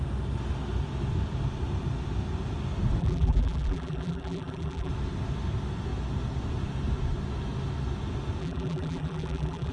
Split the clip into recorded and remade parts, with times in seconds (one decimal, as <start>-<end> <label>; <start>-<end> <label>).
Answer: 0.0-3.0 recorded; 3.0-4.9 remade; 4.9-8.4 recorded; 8.4-9.7 remade